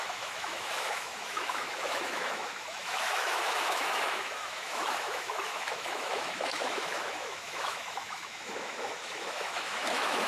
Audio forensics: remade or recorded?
remade